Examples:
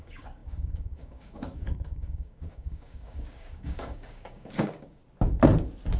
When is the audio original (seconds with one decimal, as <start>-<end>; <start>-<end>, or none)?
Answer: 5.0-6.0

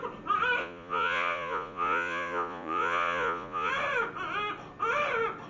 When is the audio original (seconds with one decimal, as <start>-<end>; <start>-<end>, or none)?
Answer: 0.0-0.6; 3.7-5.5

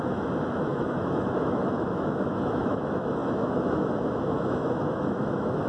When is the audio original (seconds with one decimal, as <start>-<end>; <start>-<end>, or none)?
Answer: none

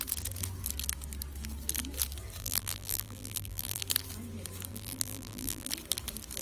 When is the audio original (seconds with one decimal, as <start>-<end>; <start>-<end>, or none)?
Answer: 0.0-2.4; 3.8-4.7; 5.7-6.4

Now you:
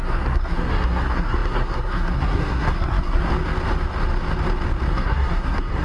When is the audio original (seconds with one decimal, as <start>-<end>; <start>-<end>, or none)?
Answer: 3.3-4.9

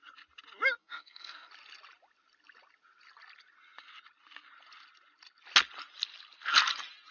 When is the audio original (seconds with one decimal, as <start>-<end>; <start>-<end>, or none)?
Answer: 0.0-0.8; 1.5-7.1

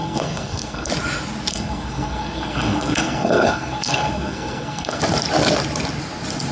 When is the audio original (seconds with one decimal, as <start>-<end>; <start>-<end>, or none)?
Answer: 0.9-1.5; 5.0-6.5